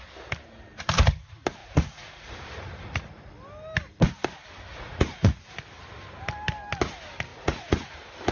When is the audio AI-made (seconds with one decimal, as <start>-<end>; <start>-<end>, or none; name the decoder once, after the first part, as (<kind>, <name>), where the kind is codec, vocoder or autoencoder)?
1.6-3.3 (vocoder, Vocos); 4.7-5.6; 7.3-7.9